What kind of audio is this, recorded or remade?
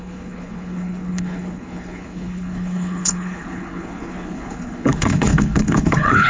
remade